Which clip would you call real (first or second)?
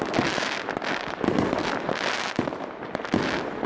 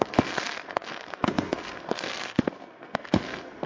first